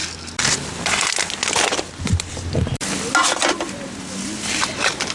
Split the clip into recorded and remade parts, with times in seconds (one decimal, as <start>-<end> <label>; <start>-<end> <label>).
0.0-5.1 recorded